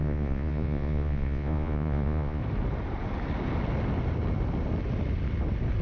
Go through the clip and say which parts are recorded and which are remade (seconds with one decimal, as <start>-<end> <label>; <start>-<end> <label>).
0.0-2.4 remade; 2.4-5.8 recorded